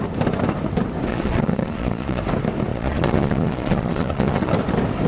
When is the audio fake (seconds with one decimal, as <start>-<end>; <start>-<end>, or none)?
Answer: 1.1-2.2; 2.7-4.5